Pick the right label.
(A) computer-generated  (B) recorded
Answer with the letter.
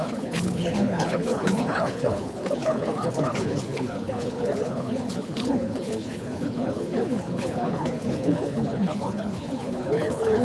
A